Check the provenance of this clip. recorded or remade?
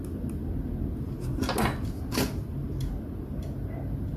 recorded